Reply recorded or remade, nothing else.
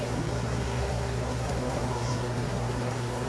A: remade